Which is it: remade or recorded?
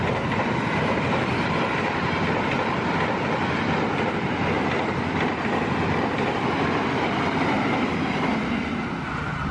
recorded